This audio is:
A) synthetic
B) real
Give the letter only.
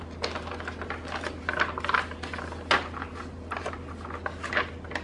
B